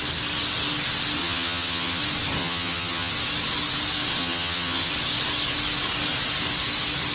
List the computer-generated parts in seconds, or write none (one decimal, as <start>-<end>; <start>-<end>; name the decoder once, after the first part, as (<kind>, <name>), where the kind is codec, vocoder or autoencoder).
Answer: 1.2-2.0 (vocoder, HiFi-GAN); 2.4-3.1; 4.2-4.9